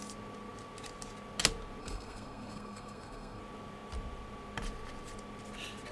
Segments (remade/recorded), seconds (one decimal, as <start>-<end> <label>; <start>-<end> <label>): 0.0-1.8 recorded; 1.8-3.4 remade; 3.4-5.9 recorded